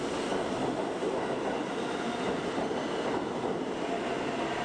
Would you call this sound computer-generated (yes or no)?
no